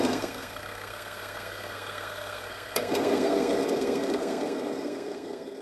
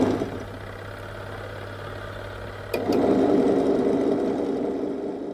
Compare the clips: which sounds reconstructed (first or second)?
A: first